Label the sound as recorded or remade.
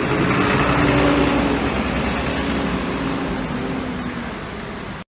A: recorded